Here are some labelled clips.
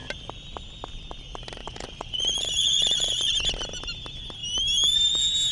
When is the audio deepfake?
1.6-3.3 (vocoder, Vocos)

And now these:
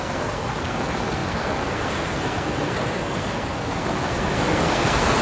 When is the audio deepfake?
0.0-5.2 (codec, SNAC)